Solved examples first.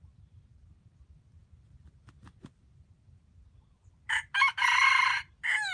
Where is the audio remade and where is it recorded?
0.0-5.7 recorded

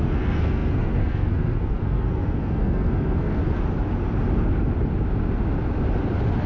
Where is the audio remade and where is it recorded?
0.0-3.4 remade; 3.4-6.5 recorded

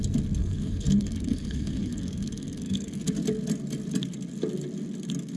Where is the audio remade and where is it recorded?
0.0-0.4 recorded; 0.4-3.0 remade; 3.0-5.4 recorded

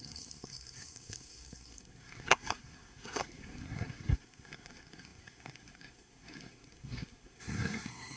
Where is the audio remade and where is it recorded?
0.0-8.2 remade

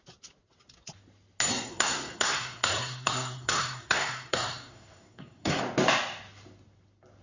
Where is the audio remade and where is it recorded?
0.0-1.5 recorded; 1.5-5.6 remade; 5.6-7.2 recorded

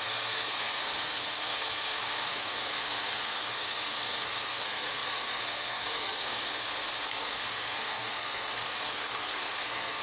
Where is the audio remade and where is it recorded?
0.0-10.0 remade

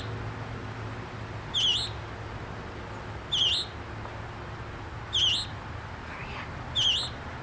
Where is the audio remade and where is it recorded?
0.0-7.4 recorded